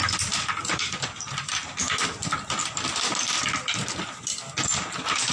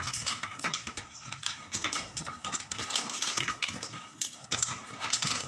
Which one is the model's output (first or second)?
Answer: second